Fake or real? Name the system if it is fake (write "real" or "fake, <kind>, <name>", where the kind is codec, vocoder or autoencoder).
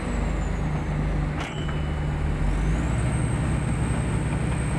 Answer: real